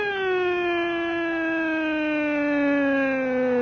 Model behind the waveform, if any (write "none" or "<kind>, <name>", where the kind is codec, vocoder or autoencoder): none